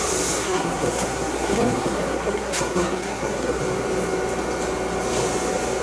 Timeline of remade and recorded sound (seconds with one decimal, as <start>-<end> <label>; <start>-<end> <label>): 0.0-0.4 recorded; 0.4-3.6 remade; 3.6-5.8 recorded